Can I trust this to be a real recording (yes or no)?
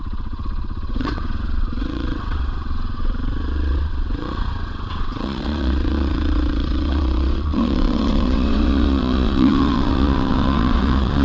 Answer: no